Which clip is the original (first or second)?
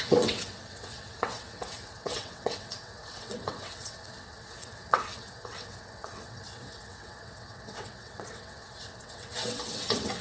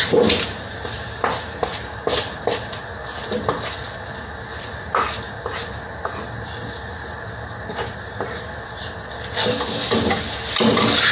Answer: second